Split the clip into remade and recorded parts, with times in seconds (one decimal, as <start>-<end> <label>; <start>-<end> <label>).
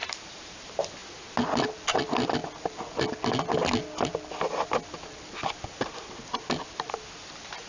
0.0-0.6 remade; 0.6-7.7 recorded